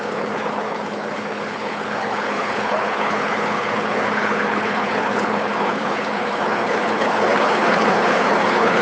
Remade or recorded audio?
remade